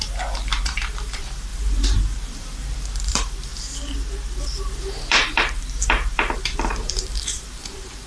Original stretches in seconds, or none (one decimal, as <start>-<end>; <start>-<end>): 3.5-4.4

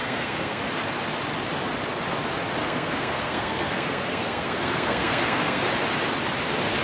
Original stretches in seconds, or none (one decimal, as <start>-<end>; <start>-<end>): 0.6-2.6; 5.7-6.8

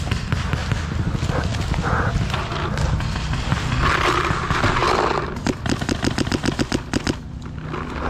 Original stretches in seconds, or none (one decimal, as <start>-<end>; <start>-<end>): 0.0-8.1

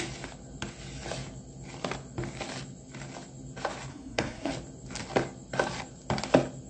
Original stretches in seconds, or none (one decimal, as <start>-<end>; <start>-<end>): 0.0-3.9; 4.5-6.7

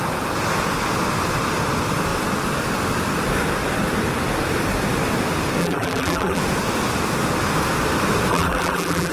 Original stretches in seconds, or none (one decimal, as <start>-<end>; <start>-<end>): 0.0-5.6; 6.4-8.3

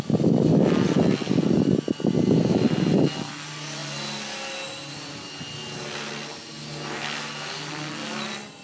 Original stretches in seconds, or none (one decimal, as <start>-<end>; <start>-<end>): 0.0-8.6

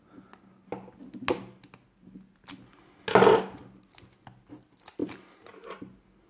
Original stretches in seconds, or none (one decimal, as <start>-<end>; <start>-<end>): 0.0-6.3

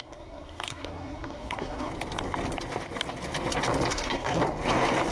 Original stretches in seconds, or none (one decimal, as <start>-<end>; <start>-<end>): 1.9-3.9; 4.4-5.1